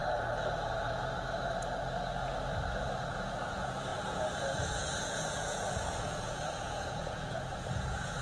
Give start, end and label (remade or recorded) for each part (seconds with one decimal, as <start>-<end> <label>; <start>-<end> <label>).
0.0-3.1 recorded; 3.1-8.2 remade